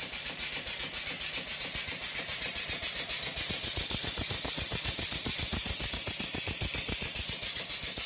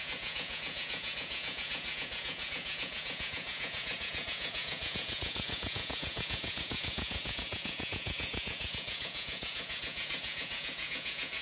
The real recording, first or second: first